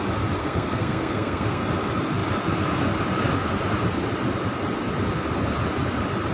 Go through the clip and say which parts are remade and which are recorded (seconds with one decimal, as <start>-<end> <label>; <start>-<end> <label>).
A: 0.0-0.4 recorded; 0.4-1.6 remade; 1.6-6.3 recorded